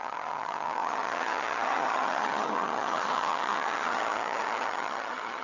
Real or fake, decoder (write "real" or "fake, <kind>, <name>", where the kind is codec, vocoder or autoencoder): fake, vocoder, HiFi-GAN